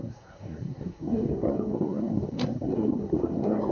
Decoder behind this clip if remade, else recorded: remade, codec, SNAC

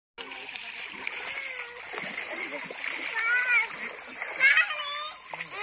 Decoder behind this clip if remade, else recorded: recorded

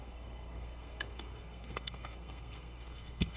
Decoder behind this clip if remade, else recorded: remade, codec, SNAC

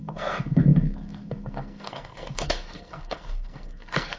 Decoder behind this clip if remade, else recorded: remade, codec, SNAC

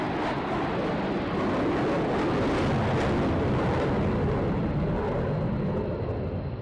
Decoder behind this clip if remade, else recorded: recorded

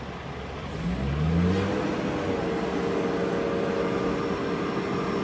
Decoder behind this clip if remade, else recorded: recorded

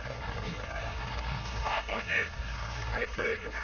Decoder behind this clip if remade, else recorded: remade, codec, SNAC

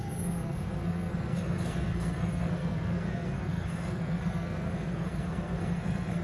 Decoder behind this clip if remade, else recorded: remade, codec, SNAC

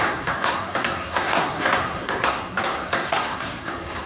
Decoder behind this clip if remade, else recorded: remade, codec, SNAC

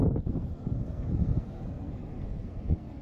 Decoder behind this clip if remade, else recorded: remade, codec, SNAC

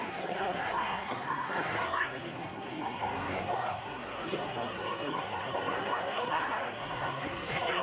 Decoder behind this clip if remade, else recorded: remade, codec, SNAC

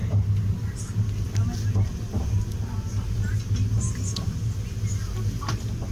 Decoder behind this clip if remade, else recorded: recorded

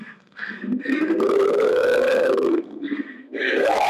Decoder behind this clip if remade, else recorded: remade, codec, SNAC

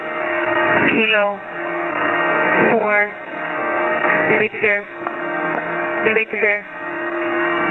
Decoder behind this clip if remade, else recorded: remade, codec, SNAC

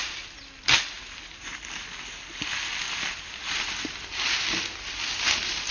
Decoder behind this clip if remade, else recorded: recorded